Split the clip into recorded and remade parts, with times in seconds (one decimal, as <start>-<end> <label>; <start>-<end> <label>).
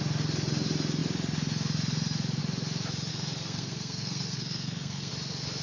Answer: 0.0-3.1 recorded; 3.1-5.1 remade; 5.1-5.6 recorded